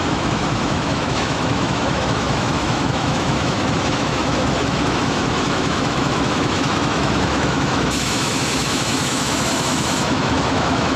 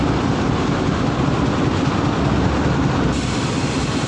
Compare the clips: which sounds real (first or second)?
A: second